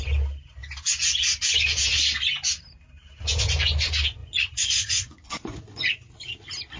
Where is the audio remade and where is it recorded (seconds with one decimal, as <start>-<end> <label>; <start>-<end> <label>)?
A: 0.0-4.2 recorded; 4.2-5.9 remade; 5.9-6.8 recorded